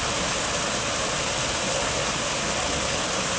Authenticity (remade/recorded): recorded